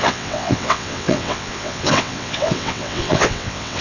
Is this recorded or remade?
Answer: remade